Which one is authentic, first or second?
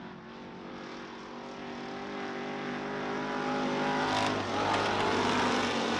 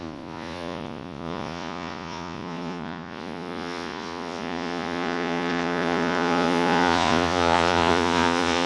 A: first